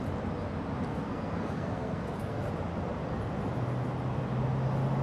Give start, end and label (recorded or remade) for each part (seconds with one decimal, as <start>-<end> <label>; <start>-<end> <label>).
0.0-0.9 recorded; 0.9-2.5 remade; 2.5-5.0 recorded